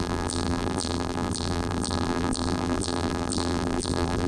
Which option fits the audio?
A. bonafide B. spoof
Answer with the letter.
B